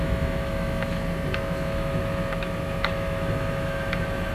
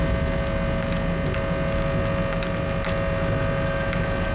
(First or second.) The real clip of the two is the second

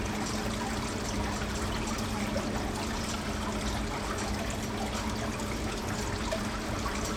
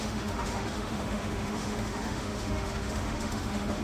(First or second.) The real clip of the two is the first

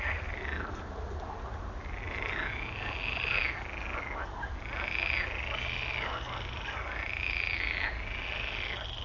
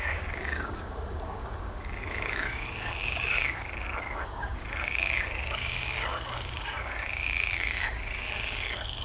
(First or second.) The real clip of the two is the first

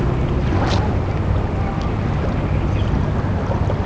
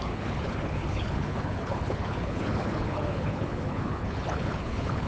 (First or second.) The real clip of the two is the first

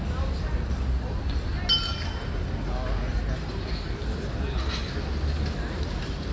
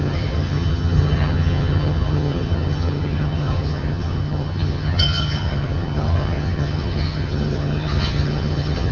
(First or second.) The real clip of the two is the first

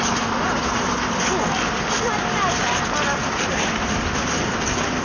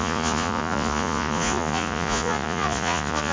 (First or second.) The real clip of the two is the first